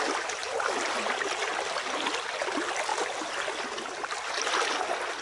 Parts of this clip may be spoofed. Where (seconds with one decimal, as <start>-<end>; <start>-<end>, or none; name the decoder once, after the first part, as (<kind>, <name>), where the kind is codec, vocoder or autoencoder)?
2.9-4.3 (vocoder, BigVGAN v2)